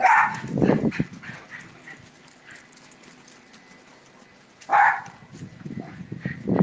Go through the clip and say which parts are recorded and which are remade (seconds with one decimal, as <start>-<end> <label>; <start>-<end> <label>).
0.0-0.8 recorded; 0.8-1.3 remade; 1.3-4.7 recorded; 4.7-5.8 remade; 5.8-6.6 recorded